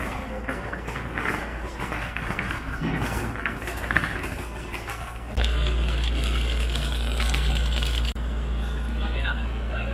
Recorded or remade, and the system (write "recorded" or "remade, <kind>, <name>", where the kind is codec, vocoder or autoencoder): remade, codec, SNAC